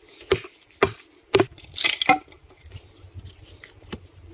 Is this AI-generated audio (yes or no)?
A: no